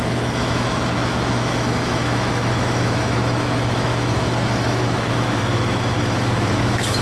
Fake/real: fake